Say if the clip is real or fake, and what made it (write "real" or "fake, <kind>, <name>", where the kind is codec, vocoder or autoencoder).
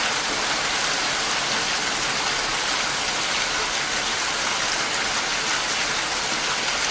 real